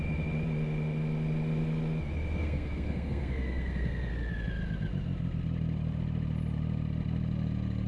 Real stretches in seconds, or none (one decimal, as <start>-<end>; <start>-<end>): 0.0-2.4; 4.1-7.9